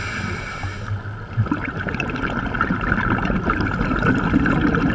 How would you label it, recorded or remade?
recorded